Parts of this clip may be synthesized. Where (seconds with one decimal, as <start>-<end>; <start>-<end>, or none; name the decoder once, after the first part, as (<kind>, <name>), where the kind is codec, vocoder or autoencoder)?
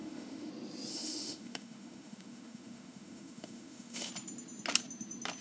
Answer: 0.0-0.5 (autoencoder, DAC-VAE); 0.9-4.1